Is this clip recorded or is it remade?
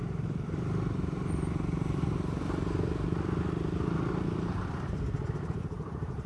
remade